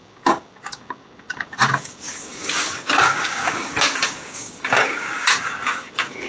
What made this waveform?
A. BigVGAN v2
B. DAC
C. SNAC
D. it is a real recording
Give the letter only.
B